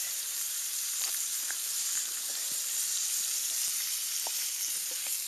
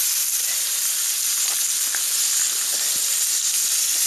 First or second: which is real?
second